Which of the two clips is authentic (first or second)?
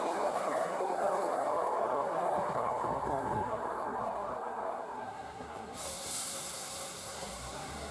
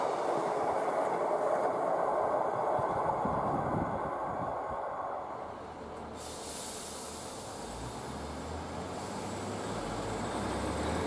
second